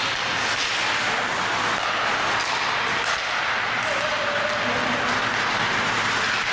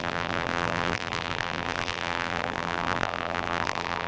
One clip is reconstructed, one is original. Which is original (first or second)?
first